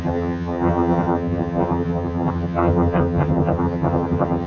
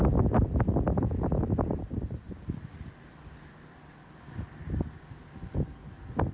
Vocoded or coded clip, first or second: first